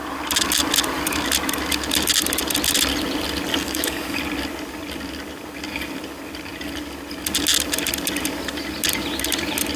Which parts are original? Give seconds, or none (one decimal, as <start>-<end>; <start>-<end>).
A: 0.0-3.5; 4.2-9.8